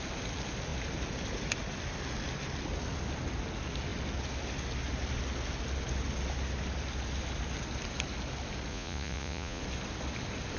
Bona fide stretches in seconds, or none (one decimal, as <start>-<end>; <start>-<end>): 0.0-8.7; 9.6-10.6